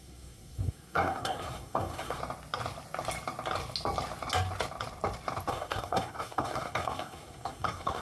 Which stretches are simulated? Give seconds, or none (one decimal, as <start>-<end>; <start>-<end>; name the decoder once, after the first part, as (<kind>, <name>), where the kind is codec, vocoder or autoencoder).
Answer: 0.0-2.2 (codec, SNAC); 5.5-8.0